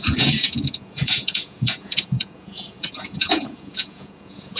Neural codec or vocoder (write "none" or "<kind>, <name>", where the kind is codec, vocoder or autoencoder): vocoder, Vocos